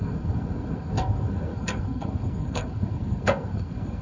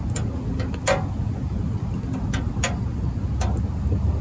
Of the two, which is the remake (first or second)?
first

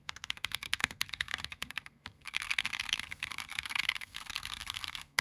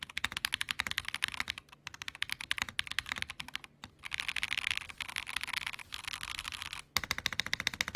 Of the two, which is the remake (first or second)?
first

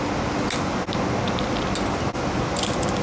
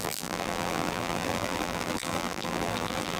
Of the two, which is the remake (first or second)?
second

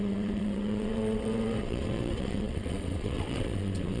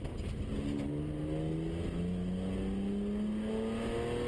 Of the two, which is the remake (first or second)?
first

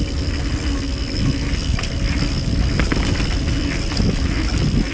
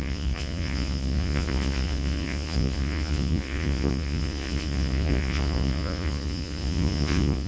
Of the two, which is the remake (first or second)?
second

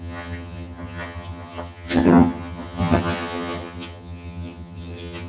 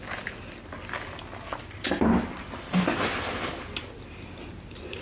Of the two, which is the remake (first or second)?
first